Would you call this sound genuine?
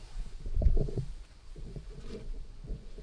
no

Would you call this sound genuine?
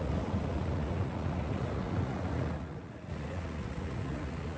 no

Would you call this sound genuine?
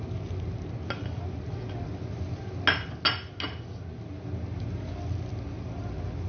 yes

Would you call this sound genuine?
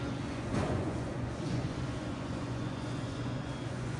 no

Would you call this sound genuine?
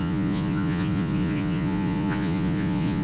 no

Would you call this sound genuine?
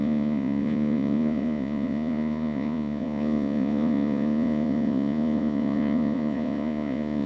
no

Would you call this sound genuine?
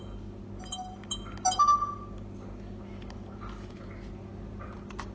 yes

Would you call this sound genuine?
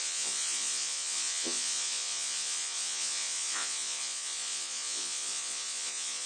no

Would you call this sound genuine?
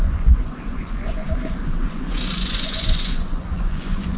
no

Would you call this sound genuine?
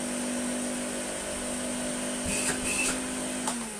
yes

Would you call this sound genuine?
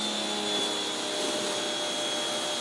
yes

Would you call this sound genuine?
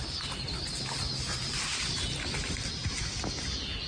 yes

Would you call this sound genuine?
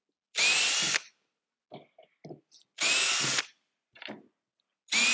yes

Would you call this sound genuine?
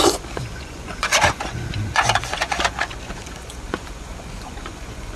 no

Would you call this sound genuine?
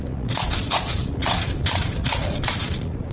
no